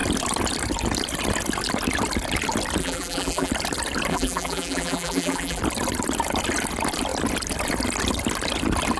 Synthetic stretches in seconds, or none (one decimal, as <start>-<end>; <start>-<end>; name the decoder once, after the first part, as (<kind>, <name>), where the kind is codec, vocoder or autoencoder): 2.8-3.5 (vocoder, BigVGAN v2); 4.1-5.6